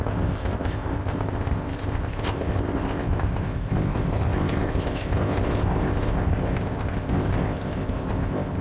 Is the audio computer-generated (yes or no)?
yes